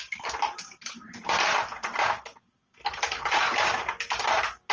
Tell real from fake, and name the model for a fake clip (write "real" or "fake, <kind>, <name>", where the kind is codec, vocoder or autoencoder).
real